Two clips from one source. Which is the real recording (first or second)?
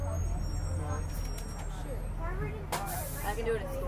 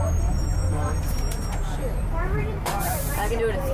first